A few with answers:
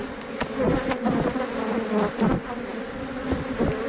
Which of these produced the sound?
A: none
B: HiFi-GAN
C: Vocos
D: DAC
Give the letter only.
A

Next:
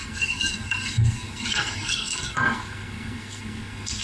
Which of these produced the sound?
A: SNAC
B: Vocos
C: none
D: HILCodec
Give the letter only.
A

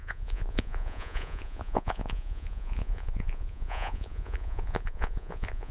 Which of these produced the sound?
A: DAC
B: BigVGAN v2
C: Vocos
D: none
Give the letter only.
C